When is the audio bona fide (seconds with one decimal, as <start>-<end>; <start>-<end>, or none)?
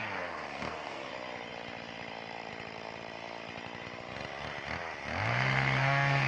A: 1.1-5.3